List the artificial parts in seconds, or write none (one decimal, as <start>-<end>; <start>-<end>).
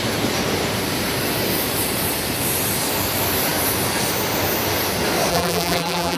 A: 5.3-6.2